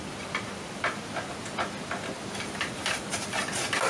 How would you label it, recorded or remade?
recorded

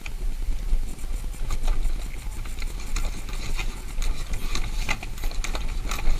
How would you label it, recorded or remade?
recorded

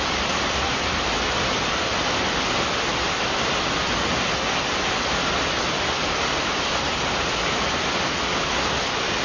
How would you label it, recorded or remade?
recorded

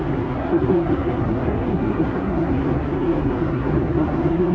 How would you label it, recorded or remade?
remade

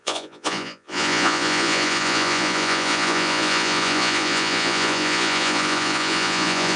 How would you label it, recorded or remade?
remade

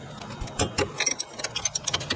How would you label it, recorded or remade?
recorded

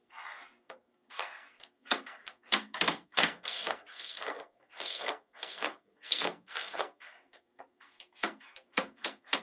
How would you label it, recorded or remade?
remade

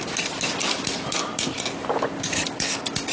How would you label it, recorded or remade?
recorded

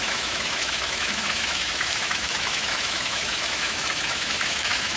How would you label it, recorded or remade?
remade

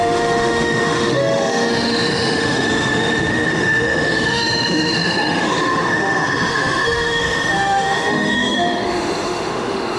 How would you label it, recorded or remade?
remade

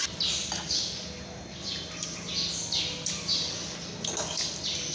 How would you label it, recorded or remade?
recorded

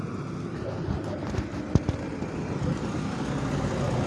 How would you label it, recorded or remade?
recorded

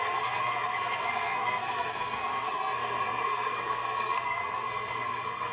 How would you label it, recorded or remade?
remade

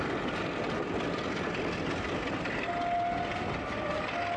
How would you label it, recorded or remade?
recorded